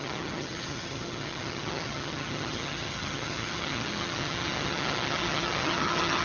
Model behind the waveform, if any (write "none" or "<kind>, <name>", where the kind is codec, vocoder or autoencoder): vocoder, HiFi-GAN